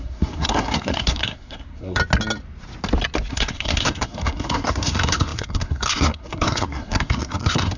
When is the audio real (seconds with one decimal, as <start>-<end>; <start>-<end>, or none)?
2.0-3.3